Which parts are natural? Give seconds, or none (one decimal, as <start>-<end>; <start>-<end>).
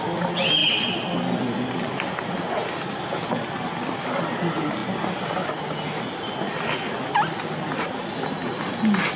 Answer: 0.0-9.2